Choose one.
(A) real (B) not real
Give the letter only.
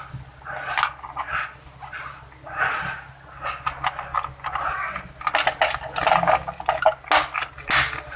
A